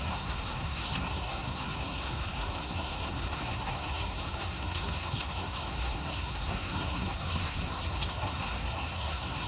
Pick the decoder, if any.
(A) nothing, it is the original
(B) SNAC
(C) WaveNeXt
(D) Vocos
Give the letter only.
B